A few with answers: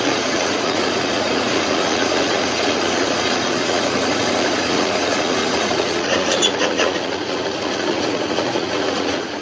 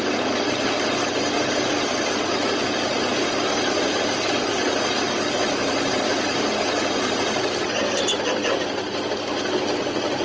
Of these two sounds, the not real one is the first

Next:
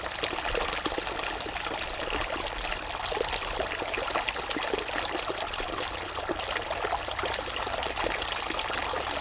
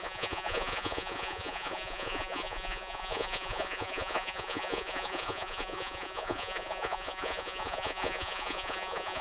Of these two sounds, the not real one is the second